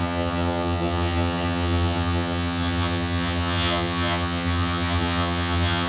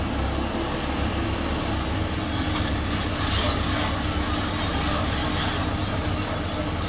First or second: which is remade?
first